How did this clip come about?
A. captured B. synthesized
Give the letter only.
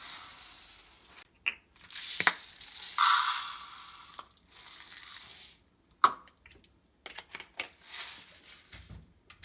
A